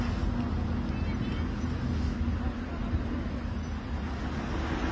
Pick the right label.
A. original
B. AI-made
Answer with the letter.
A